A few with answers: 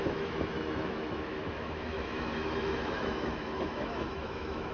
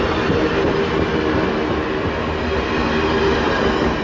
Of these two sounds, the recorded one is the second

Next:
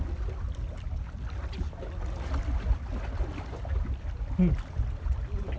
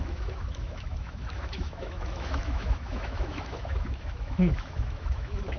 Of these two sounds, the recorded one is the first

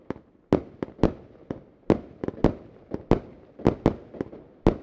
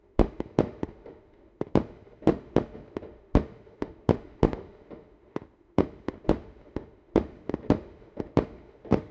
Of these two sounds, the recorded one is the first